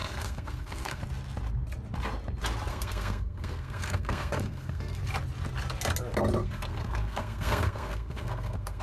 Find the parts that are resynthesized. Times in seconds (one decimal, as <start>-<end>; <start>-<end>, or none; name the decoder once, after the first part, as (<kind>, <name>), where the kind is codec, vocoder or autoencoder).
0.0-1.0 (codec, SNAC); 2.7-5.0; 6.4-8.8